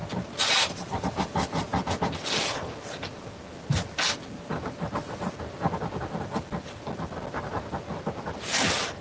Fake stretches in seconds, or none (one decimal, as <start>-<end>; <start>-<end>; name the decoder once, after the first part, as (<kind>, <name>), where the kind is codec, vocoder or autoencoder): none